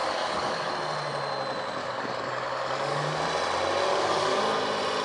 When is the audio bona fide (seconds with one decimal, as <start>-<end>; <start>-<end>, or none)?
0.7-1.8; 3.2-3.9; 4.4-5.0